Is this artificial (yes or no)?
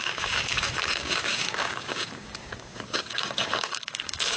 yes